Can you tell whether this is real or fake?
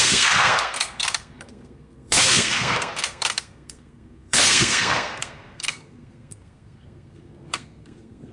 fake